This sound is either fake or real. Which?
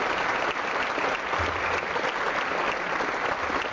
real